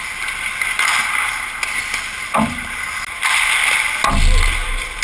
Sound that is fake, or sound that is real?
real